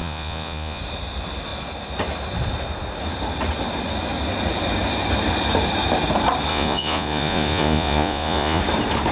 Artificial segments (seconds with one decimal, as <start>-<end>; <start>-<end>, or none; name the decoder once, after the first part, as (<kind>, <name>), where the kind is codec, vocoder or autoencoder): 0.0-0.8 (vocoder, Vocos); 6.5-8.6